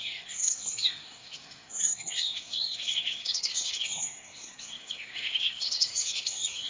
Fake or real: fake